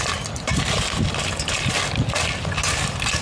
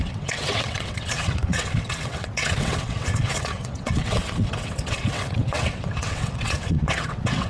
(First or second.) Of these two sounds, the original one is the first